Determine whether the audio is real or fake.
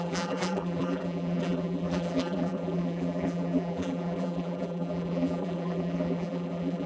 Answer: fake